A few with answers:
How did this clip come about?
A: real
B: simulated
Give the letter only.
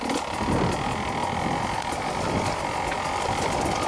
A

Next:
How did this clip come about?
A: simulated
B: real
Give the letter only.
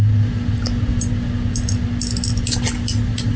B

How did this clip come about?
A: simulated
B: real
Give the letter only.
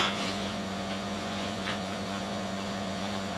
A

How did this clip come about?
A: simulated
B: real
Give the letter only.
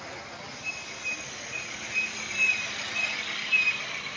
B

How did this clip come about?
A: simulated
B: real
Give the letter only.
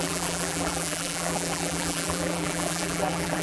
A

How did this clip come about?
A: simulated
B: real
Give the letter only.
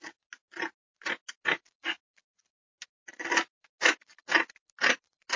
B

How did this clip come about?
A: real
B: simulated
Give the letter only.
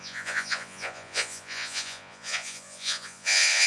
B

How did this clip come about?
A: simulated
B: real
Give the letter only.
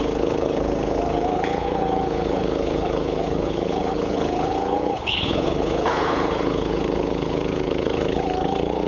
A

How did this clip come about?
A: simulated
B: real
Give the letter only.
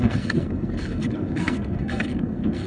A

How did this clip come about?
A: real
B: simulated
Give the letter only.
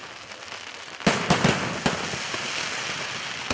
A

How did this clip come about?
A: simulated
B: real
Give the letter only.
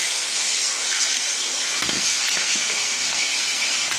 A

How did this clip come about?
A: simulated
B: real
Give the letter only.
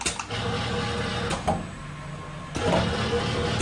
B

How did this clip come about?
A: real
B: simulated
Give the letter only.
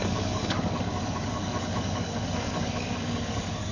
B